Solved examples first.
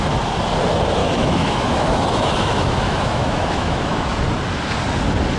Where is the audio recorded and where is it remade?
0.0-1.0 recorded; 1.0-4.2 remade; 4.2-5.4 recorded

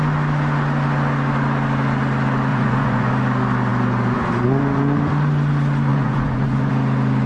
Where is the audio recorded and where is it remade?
0.0-2.5 recorded; 2.5-3.1 remade; 3.1-5.9 recorded; 5.9-6.7 remade; 6.7-7.3 recorded

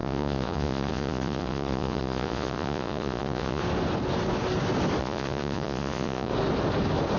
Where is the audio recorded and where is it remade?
0.0-3.6 remade; 3.6-5.0 recorded; 5.0-6.3 remade; 6.3-7.2 recorded

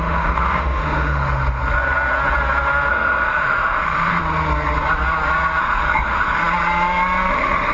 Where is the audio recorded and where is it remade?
0.0-1.6 remade; 1.6-2.9 recorded; 2.9-4.2 remade; 4.2-5.6 recorded; 5.6-6.4 remade; 6.4-7.3 recorded; 7.3-7.7 remade

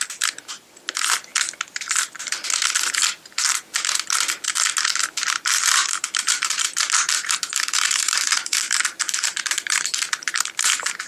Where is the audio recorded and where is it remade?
0.0-5.8 recorded; 5.8-10.5 remade; 10.5-11.1 recorded

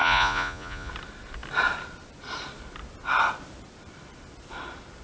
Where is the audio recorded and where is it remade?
0.0-0.9 remade; 0.9-5.0 recorded

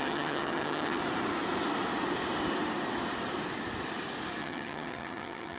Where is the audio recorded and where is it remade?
0.0-1.0 remade; 1.0-4.4 recorded; 4.4-5.6 remade

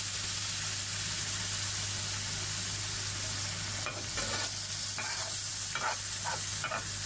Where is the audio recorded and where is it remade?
0.0-7.1 recorded